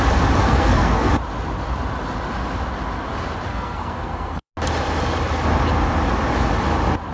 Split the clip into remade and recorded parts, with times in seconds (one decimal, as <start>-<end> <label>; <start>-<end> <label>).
0.0-0.4 recorded; 0.4-1.1 remade; 1.1-3.5 recorded; 3.5-4.5 remade; 4.5-7.1 recorded